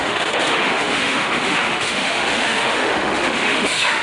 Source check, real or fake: fake